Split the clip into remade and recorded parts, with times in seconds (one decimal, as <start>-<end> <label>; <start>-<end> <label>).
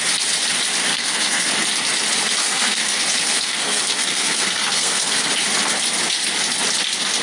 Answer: 0.0-0.9 recorded; 0.9-1.5 remade; 1.5-2.4 recorded; 2.4-5.3 remade; 5.3-7.2 recorded